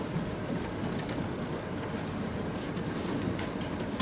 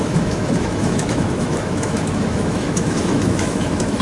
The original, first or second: first